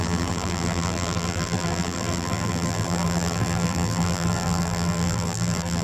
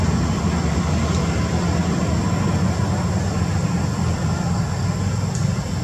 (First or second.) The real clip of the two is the second